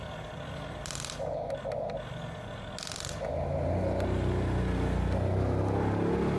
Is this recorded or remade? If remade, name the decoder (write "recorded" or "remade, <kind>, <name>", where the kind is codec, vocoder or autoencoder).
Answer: recorded